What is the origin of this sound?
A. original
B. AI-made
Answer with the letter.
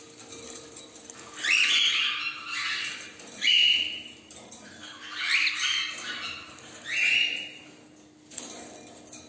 A